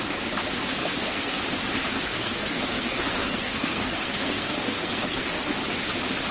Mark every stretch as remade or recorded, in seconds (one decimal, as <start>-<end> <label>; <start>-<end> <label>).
0.0-0.8 recorded; 0.8-1.4 remade; 1.4-2.1 recorded; 2.1-5.3 remade; 5.3-6.3 recorded